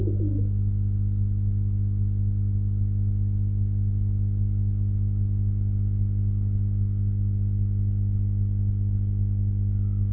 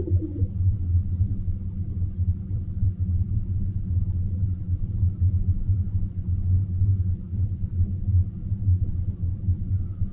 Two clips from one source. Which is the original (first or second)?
first